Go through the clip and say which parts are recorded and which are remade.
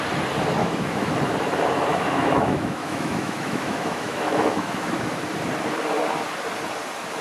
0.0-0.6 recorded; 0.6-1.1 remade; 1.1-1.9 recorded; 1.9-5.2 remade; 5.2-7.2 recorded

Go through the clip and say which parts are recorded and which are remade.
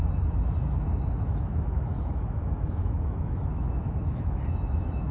0.0-0.6 recorded; 0.6-5.1 remade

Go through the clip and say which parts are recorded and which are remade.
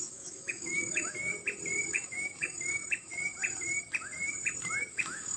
0.0-1.3 remade; 1.3-1.9 recorded; 1.9-3.1 remade; 3.1-4.9 recorded; 4.9-5.4 remade